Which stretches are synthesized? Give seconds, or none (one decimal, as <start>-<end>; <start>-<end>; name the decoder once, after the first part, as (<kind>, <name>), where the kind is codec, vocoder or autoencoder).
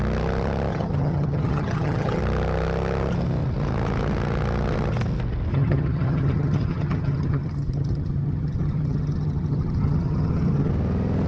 0.7-2.2 (vocoder, HiFi-GAN); 5.5-10.7